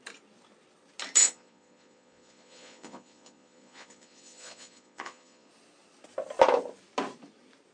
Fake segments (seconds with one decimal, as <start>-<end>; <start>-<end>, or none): 1.2-5.5